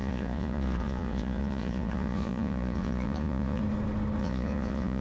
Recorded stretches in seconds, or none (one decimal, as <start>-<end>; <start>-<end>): 3.6-4.2